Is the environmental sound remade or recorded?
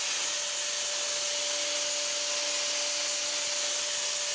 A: recorded